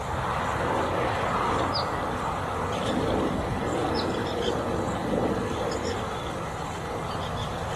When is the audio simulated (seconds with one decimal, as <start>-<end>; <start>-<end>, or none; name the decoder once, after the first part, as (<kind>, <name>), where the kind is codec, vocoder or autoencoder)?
none